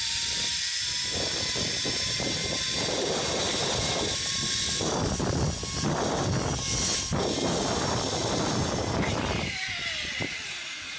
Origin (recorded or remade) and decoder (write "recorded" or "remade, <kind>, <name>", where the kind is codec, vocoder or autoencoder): recorded